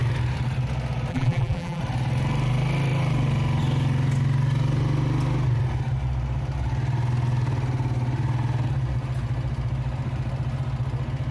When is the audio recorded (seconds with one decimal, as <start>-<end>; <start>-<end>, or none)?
0.0-1.1; 1.8-11.3